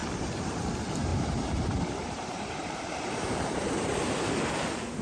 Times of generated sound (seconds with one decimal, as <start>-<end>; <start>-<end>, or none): 0.0-0.7; 1.1-4.1